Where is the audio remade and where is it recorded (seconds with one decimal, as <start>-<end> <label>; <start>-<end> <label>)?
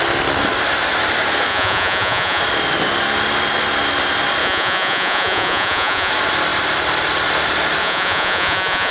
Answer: 0.0-1.5 recorded; 1.5-2.4 remade; 2.4-4.4 recorded; 4.4-6.1 remade; 6.1-7.8 recorded; 7.8-8.9 remade